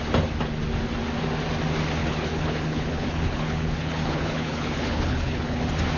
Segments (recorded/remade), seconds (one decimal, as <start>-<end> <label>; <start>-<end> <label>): 0.0-2.0 recorded; 2.0-5.6 remade; 5.6-6.0 recorded